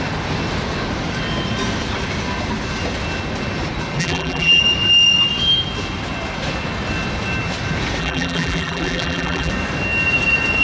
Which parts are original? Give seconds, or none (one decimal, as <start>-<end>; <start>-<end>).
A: 0.0-4.0; 4.6-8.0; 9.5-10.6